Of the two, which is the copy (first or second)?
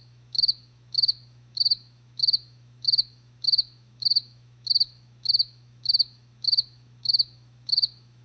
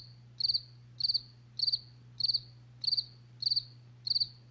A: first